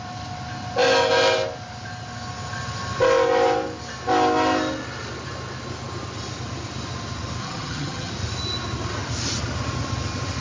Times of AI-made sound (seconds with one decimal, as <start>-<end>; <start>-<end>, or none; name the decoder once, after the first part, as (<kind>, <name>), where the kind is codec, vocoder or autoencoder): 7.4-8.1 (vocoder, HiFi-GAN)